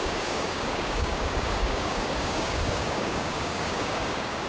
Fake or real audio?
fake